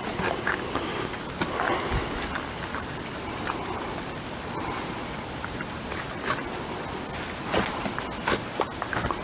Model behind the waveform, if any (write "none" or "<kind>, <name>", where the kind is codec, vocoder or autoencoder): vocoder, BigVGAN v2